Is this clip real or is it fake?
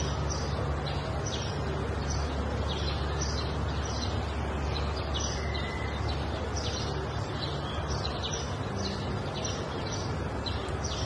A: real